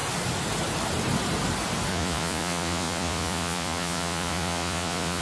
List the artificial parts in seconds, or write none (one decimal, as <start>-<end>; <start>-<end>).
1.9-5.2